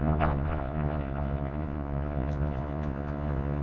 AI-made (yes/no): yes